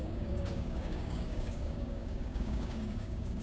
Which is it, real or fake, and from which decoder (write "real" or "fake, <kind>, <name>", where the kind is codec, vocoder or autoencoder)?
fake, codec, DAC